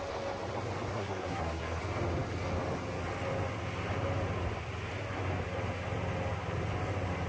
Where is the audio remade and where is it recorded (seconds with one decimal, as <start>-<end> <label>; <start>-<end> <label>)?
0.0-0.9 recorded; 0.9-1.8 remade; 1.8-7.3 recorded